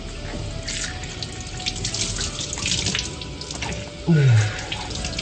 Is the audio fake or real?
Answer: real